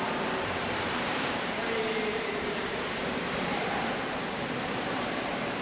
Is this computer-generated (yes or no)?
yes